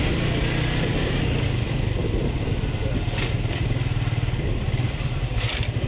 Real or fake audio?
real